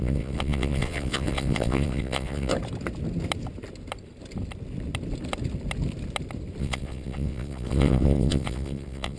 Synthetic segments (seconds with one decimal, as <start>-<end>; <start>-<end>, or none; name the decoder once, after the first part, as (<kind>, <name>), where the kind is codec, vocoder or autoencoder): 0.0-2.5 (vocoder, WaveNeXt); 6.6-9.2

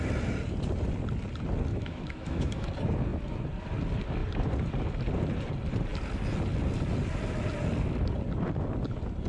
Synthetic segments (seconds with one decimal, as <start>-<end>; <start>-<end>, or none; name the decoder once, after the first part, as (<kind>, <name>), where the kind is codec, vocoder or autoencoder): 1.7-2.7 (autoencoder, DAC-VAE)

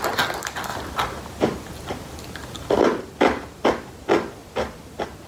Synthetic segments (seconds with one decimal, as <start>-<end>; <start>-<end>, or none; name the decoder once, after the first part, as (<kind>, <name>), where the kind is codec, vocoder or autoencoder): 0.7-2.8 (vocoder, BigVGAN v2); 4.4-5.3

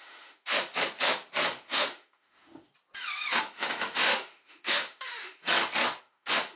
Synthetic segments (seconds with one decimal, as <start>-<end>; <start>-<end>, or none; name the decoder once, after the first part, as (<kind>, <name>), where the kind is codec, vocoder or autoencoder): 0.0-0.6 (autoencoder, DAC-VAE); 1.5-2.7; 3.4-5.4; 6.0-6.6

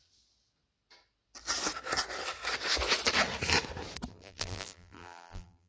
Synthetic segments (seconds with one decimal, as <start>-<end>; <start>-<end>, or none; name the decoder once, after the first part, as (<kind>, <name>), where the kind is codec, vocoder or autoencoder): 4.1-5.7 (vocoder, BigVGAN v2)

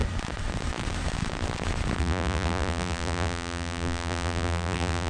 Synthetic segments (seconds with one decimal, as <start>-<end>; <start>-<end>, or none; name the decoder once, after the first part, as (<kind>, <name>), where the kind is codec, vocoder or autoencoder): 2.0-5.1 (vocoder, BigVGAN v2)

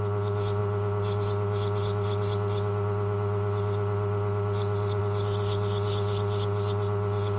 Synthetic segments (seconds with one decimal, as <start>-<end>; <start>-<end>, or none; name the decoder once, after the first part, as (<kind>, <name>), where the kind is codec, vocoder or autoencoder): none